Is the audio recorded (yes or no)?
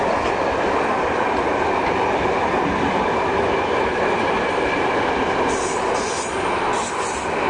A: yes